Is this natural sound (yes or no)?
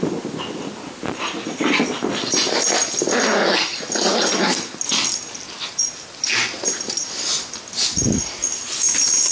yes